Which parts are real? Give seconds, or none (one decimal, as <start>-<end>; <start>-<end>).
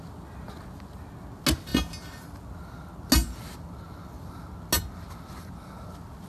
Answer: 0.0-6.3